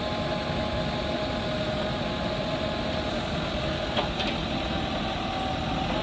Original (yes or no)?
yes